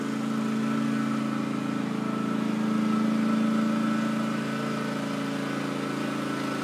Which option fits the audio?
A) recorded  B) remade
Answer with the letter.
A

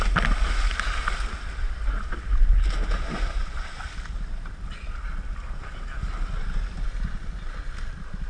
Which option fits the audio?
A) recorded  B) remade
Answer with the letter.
A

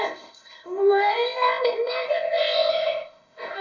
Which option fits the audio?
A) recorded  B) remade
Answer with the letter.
B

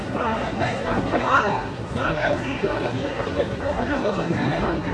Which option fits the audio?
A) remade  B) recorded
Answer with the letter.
A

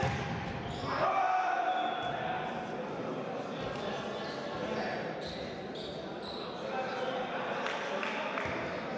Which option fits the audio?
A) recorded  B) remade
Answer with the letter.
A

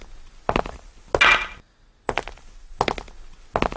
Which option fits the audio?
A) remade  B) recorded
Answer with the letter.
B